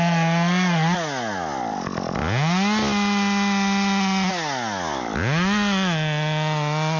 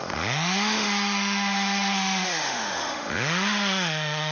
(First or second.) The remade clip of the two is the second